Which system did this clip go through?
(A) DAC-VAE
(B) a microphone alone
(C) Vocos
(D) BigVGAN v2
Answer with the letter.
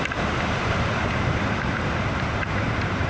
D